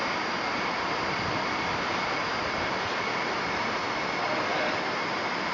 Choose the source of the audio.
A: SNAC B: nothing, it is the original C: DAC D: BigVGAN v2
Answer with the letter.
D